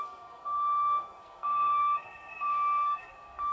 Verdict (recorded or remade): remade